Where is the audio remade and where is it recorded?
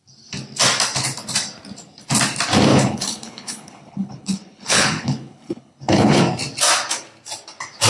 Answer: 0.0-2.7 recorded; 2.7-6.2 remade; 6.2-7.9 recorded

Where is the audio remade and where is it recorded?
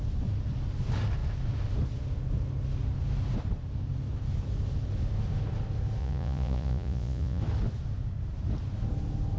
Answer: 0.0-6.0 recorded; 6.0-7.4 remade; 7.4-9.4 recorded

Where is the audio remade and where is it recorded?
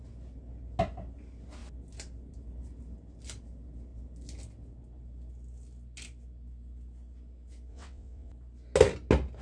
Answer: 0.0-7.7 recorded; 7.7-8.3 remade; 8.3-9.4 recorded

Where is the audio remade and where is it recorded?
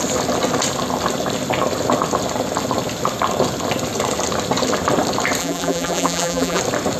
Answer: 0.0-5.4 recorded; 5.4-6.6 remade; 6.6-7.0 recorded